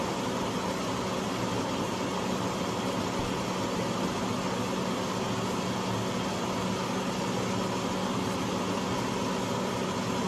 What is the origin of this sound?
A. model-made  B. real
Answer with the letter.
B